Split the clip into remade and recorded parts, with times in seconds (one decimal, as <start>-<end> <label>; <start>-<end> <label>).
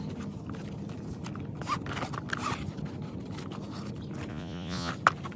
0.0-4.3 recorded; 4.3-4.9 remade; 4.9-5.4 recorded